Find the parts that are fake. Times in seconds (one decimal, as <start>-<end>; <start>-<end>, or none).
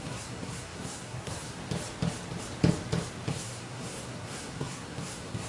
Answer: 0.0-1.6; 3.3-5.5